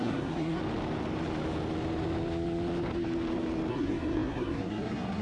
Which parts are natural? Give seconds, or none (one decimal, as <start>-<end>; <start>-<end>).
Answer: 0.6-3.7

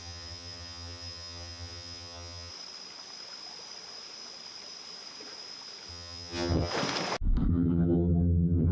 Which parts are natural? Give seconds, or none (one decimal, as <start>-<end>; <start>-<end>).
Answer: 2.5-5.9; 6.7-7.5